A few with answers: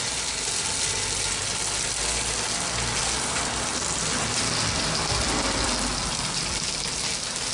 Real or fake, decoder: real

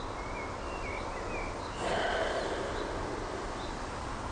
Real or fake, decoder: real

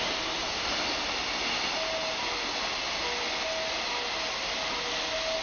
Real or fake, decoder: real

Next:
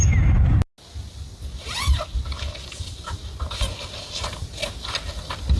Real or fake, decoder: real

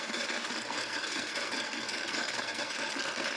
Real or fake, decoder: fake, codec, SNAC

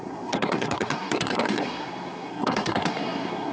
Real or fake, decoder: fake, codec, SNAC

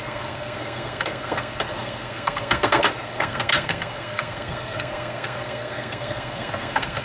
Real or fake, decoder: fake, codec, SNAC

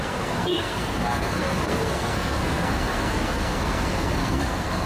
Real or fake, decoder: fake, codec, SNAC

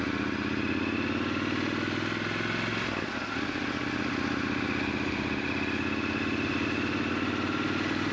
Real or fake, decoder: real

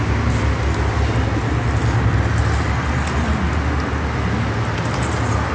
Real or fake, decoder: real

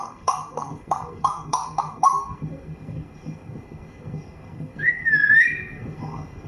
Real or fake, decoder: fake, codec, SNAC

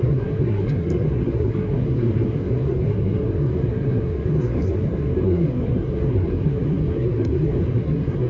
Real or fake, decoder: fake, codec, SNAC